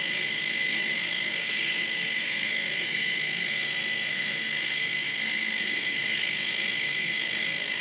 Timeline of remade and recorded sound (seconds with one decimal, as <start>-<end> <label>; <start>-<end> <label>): 0.0-7.8 remade